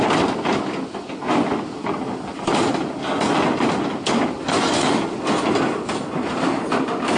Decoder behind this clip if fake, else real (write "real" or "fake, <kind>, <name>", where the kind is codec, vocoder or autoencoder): real